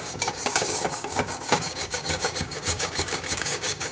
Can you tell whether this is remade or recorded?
remade